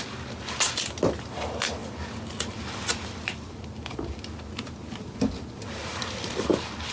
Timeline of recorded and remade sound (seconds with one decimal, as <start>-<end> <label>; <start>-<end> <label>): 0.0-6.9 recorded